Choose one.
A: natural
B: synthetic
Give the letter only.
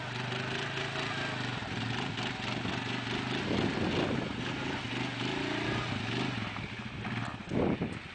A